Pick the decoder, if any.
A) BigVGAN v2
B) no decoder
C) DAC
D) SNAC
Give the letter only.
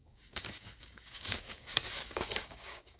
C